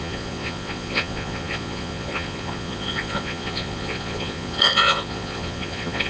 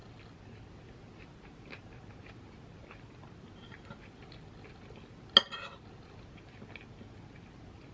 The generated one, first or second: first